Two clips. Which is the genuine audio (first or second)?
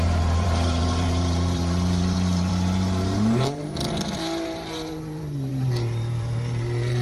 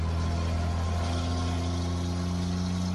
second